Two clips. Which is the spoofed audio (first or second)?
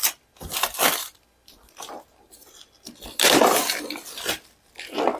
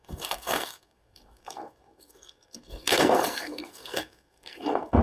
second